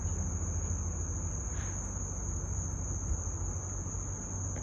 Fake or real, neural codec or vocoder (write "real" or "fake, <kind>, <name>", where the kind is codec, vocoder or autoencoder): real